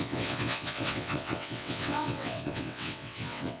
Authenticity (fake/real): fake